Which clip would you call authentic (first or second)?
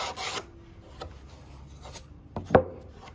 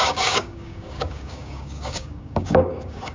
first